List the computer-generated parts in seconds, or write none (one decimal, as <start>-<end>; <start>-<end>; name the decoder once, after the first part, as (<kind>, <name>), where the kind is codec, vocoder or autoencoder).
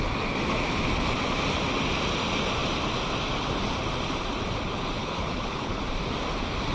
5.0-5.8 (codec, HILCodec)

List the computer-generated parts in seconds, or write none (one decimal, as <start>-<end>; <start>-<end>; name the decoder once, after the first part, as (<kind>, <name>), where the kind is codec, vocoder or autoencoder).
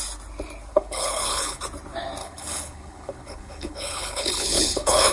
0.7-1.6 (codec, HILCodec); 2.2-5.1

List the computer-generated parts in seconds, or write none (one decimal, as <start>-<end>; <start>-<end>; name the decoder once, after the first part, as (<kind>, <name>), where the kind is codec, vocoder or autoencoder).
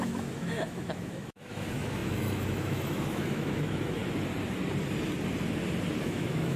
0.0-4.0 (autoencoder, DAC-VAE); 6.0-6.6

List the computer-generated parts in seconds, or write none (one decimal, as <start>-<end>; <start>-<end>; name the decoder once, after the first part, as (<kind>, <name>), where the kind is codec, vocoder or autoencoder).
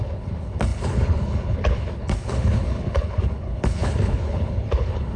0.0-5.2 (codec, HILCodec)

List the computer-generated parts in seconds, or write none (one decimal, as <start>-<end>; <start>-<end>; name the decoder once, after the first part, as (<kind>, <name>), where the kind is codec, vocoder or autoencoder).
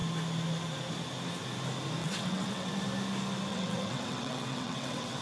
2.0-2.7 (vocoder, WaveNeXt); 3.5-5.2